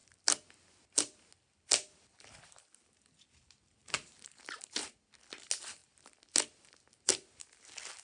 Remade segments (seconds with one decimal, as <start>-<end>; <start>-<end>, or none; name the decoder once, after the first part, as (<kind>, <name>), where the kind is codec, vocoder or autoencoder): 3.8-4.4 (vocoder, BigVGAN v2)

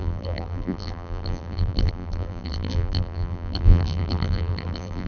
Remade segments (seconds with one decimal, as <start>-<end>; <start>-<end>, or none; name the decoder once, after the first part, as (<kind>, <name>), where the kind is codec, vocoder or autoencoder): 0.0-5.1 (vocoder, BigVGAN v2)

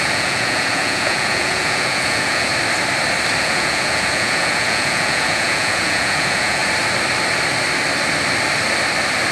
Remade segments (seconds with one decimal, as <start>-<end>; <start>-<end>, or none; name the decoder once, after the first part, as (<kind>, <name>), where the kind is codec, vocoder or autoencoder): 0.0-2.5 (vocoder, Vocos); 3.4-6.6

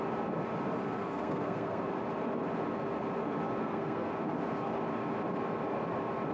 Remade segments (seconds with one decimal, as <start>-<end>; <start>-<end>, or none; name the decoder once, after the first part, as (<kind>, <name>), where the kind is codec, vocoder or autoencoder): 1.0-1.8 (codec, SNAC); 3.6-4.1